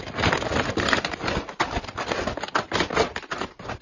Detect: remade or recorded recorded